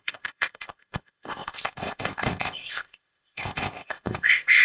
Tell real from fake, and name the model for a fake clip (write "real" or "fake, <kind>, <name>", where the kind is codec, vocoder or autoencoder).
fake, codec, ZipCodec